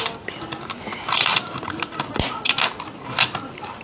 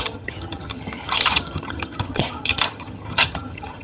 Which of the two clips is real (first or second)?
first